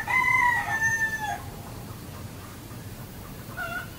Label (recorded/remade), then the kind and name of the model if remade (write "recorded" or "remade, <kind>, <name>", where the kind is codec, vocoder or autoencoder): remade, vocoder, BigVGAN v2